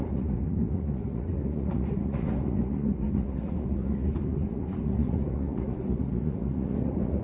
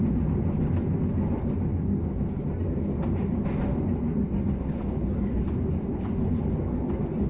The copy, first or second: first